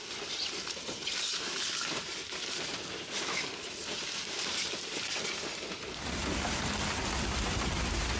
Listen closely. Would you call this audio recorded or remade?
recorded